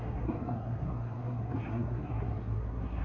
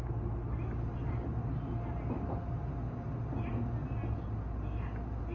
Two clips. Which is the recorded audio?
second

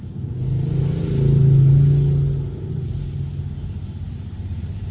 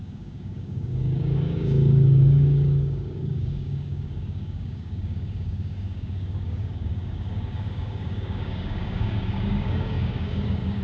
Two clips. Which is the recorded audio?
first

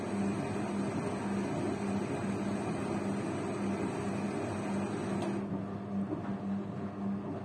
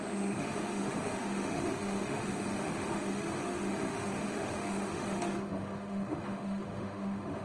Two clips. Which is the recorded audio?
first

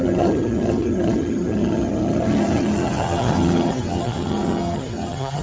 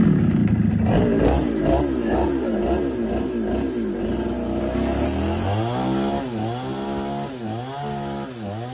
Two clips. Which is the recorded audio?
second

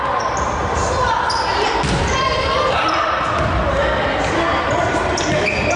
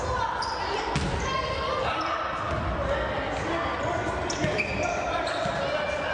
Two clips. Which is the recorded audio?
second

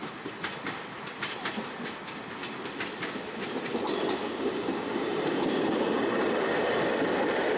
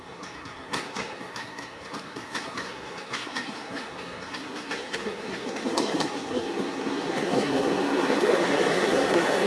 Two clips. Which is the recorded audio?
first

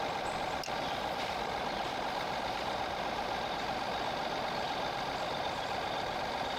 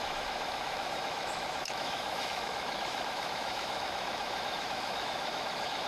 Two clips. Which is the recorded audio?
first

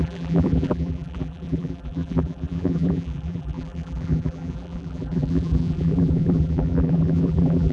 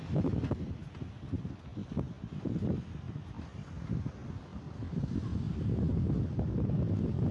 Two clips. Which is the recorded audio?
second